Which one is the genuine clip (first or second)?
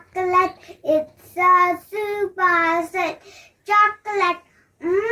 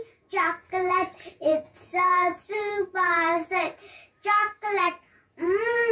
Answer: first